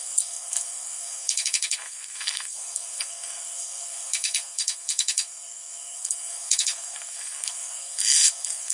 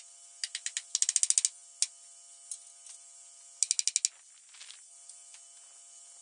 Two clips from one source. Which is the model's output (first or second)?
first